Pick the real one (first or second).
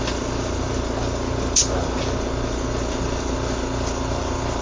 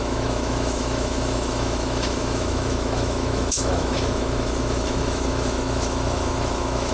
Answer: first